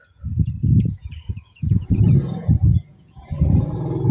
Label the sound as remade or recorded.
remade